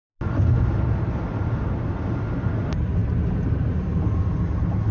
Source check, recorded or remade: recorded